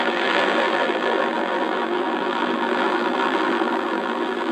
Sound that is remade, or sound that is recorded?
remade